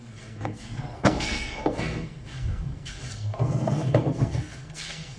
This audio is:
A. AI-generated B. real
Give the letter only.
A